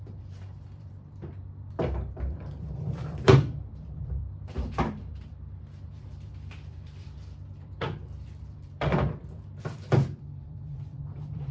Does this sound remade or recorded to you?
remade